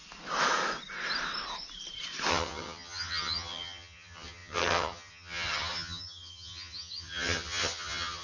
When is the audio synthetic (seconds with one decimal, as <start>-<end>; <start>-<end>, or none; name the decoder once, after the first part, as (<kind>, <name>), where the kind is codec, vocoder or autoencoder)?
2.3-8.2 (vocoder, HiFi-GAN)

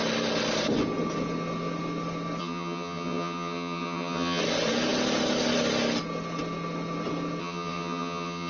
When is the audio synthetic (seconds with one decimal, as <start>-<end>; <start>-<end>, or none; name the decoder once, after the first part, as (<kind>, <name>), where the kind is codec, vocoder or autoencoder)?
2.4-4.4 (vocoder, HiFi-GAN); 7.4-8.5

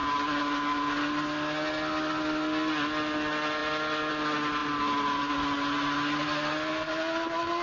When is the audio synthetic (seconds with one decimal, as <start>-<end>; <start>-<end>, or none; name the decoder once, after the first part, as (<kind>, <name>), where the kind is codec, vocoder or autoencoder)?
none

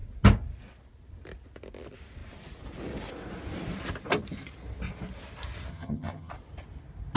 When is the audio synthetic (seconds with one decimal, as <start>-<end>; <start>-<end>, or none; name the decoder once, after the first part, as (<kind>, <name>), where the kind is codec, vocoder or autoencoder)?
5.7-6.3 (vocoder, HiFi-GAN)

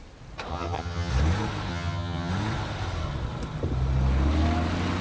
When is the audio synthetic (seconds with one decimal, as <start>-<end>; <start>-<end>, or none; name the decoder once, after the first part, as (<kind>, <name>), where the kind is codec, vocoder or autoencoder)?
0.5-1.1 (vocoder, HiFi-GAN); 1.7-2.3

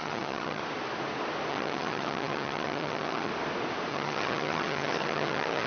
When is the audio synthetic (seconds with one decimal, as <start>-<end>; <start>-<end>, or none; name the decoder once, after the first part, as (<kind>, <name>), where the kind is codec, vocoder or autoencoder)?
0.0-0.6 (vocoder, HiFi-GAN); 1.5-3.3; 3.9-5.7